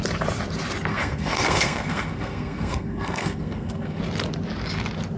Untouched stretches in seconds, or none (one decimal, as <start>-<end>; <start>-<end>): 0.0-0.9; 4.0-5.2